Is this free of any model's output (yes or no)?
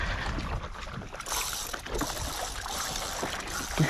yes